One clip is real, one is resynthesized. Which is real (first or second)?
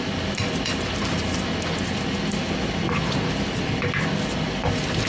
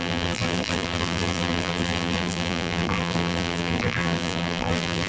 first